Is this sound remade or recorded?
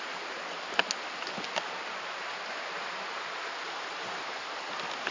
recorded